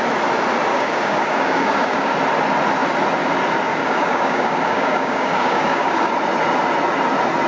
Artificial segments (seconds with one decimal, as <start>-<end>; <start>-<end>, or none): 0.7-2.1; 3.7-6.1